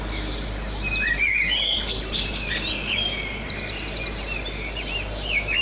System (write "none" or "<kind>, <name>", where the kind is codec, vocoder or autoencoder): vocoder, BigVGAN v2